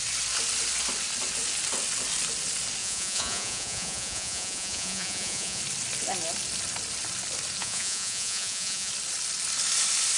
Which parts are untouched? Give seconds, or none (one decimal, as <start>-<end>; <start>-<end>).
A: 0.0-2.8; 5.6-7.6; 8.9-10.2